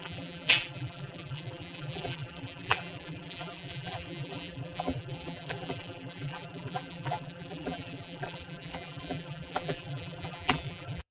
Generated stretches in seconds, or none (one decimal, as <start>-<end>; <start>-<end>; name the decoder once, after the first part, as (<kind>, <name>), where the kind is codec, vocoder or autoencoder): 0.0-11.1 (vocoder, BigVGAN v2)